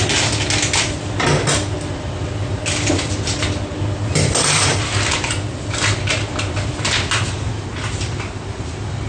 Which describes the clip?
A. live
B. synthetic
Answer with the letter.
A